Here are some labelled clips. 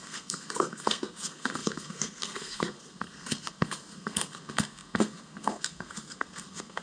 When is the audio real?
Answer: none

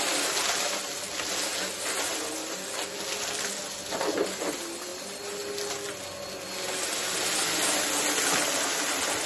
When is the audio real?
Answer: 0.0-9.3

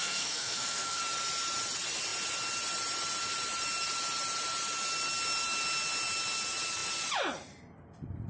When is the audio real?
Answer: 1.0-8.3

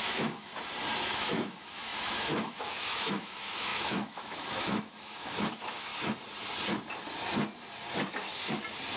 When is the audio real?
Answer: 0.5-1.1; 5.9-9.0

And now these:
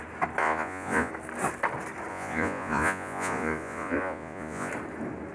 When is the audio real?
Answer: 0.0-0.4; 1.1-2.1; 4.7-5.3

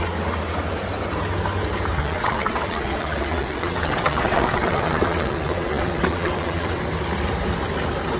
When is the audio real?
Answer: 0.0-1.9; 6.8-8.2

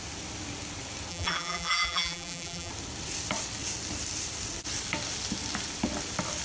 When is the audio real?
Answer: 0.0-1.1; 2.7-6.4

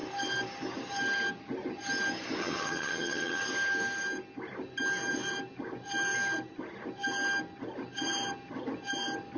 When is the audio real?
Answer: 0.0-2.4; 3.4-9.4